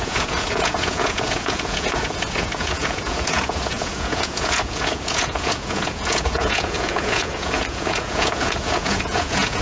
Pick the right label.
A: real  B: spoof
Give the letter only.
B